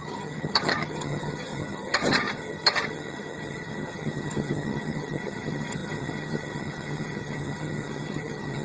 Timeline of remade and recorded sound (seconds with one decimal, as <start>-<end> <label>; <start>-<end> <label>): 0.0-8.6 remade